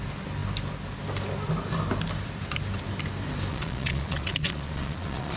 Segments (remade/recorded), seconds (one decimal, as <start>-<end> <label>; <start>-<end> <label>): 0.0-3.5 recorded; 3.5-5.4 remade